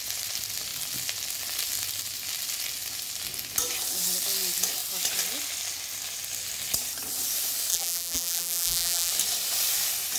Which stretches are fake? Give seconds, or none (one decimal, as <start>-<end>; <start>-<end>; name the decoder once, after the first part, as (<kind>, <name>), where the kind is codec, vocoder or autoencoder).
7.7-9.1 (vocoder, BigVGAN v2)